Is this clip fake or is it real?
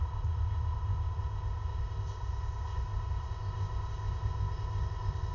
fake